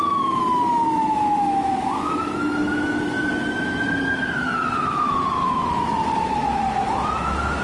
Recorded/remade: remade